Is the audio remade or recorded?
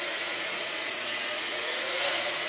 remade